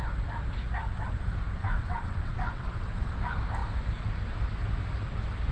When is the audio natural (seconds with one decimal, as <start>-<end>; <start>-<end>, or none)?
0.0-1.5; 3.1-5.5